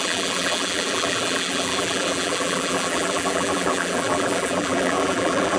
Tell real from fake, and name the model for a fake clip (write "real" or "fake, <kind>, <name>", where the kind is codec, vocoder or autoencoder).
fake, vocoder, BigVGAN v2